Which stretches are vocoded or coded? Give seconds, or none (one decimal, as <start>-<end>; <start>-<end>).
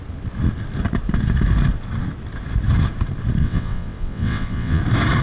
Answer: 3.4-4.8